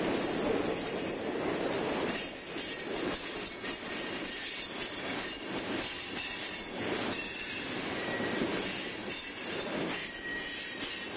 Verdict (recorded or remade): recorded